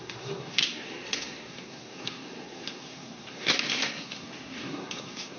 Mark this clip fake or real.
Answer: fake